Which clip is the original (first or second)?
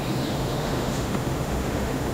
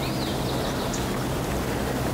second